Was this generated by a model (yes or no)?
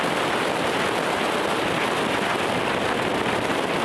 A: no